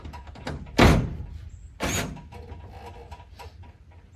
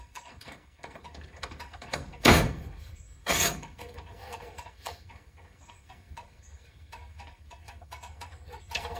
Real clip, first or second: first